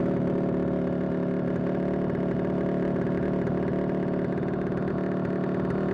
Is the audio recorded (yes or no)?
yes